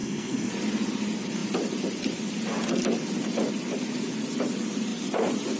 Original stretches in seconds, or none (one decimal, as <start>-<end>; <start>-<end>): 0.5-5.6